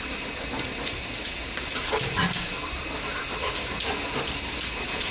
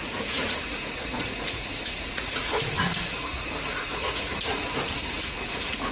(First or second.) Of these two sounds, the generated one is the second